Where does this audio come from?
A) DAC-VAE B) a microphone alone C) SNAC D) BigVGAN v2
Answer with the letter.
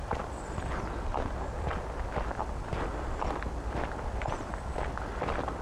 B